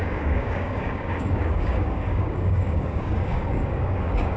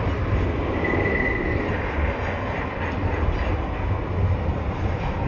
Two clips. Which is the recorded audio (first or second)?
second